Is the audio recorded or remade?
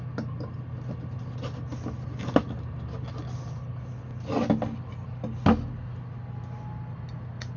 recorded